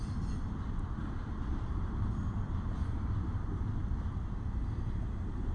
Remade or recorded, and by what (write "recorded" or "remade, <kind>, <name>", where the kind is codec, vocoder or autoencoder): recorded